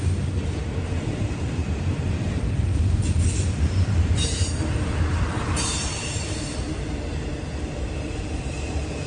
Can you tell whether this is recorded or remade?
remade